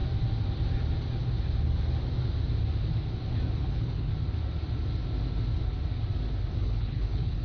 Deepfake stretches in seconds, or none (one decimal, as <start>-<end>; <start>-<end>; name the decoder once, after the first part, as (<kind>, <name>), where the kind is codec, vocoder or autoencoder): 3.6-4.1 (codec, HILCodec); 6.6-7.4